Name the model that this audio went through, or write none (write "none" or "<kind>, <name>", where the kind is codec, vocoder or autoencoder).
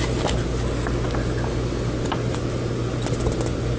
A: none